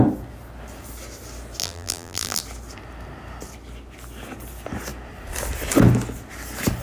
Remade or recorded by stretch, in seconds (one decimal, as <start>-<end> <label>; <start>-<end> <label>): 0.0-1.6 recorded; 1.6-2.4 remade; 2.4-6.8 recorded